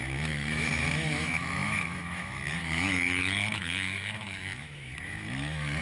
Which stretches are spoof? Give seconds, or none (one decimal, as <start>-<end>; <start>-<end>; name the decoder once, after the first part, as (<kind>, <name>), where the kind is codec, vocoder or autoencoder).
0.0-5.8 (autoencoder, DAC-VAE)